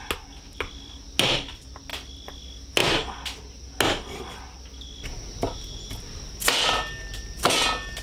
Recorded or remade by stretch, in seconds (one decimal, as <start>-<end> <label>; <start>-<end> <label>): 0.0-8.0 recorded